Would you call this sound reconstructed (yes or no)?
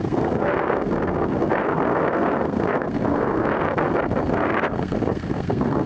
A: yes